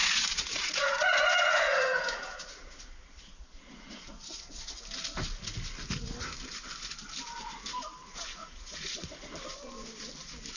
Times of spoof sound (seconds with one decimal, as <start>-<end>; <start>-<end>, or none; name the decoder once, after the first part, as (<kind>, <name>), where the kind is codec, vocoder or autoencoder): 0.0-4.8 (vocoder, Vocos); 8.0-9.2